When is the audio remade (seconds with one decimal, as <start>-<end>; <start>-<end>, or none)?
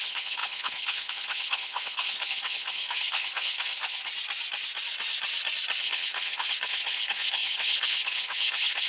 0.0-4.1; 5.8-8.9